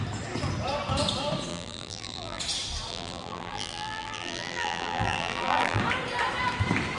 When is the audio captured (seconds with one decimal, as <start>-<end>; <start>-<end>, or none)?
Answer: 0.0-1.5; 2.4-2.9; 5.8-7.0